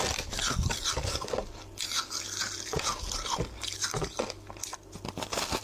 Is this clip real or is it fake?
real